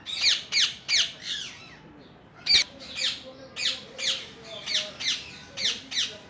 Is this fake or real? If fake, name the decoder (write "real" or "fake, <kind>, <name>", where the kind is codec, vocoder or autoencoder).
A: real